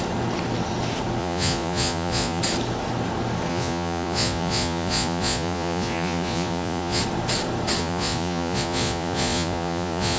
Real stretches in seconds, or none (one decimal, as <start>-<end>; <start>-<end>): 0.0-1.2; 2.4-3.5; 7.0-7.8